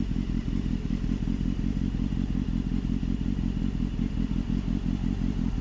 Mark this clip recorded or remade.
recorded